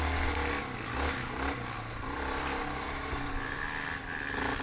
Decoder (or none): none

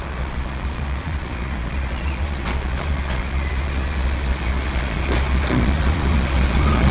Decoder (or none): vocoder, Vocos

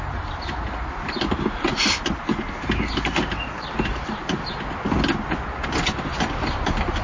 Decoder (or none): none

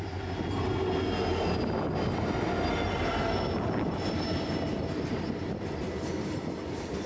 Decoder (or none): none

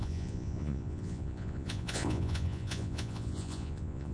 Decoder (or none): vocoder, Vocos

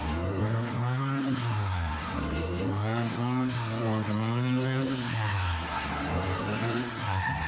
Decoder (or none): codec, SNAC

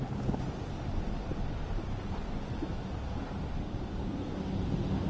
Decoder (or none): none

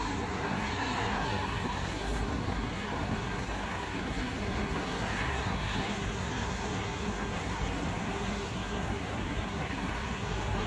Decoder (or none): codec, SNAC